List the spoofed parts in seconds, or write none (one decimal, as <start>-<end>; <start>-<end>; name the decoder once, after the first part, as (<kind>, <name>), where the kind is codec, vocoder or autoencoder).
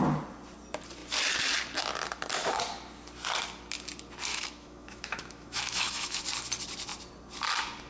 4.3-6.2 (autoencoder, DAC-VAE)